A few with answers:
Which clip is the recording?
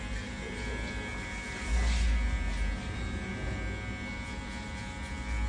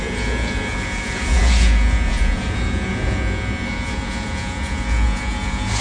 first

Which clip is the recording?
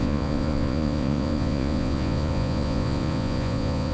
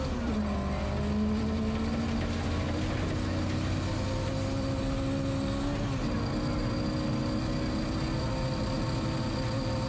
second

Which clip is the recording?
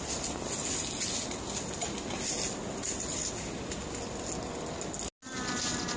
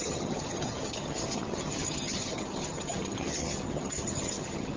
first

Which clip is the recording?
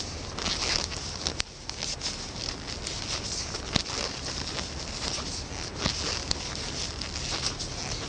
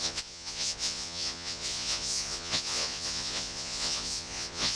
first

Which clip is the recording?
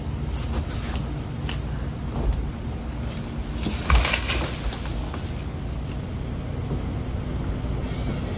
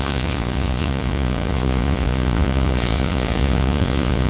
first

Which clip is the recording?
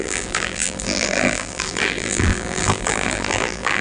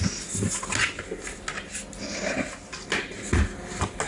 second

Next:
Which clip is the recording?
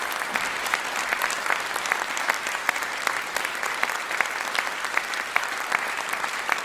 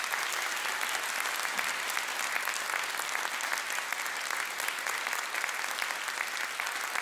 second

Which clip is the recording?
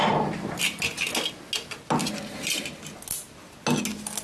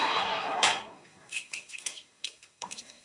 first